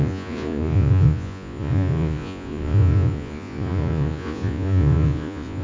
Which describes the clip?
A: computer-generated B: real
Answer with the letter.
A